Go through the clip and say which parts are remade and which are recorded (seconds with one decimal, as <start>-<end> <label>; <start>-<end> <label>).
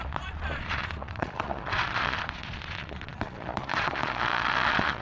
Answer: 0.0-5.0 remade